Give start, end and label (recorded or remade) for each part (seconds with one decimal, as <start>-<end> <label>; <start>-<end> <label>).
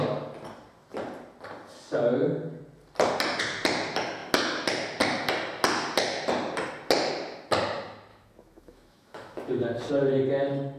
0.0-8.1 recorded; 8.1-9.9 remade; 9.9-10.8 recorded